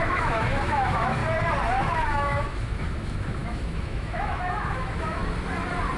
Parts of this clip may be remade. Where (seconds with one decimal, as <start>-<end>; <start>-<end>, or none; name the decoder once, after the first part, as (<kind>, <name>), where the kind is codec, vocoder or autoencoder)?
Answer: 0.0-1.2 (autoencoder, DAC-VAE); 1.8-5.2